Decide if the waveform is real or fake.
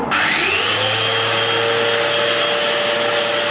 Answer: real